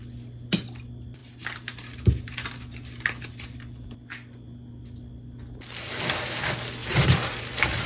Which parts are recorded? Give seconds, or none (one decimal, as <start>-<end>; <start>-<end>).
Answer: 0.0-6.8; 7.4-7.9